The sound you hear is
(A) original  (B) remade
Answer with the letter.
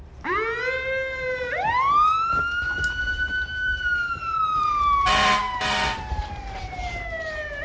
B